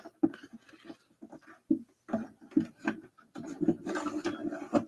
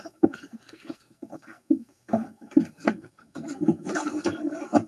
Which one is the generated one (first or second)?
second